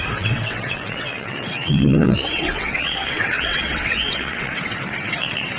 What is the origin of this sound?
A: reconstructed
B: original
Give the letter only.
A